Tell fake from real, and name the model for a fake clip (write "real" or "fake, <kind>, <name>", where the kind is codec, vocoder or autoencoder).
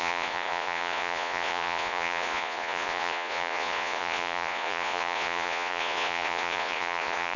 fake, vocoder, Vocos